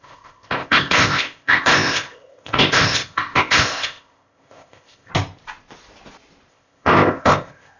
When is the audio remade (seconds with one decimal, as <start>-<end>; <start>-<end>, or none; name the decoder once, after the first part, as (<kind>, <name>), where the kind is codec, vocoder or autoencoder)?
0.0-5.1 (codec, ZipCodec); 6.5-7.8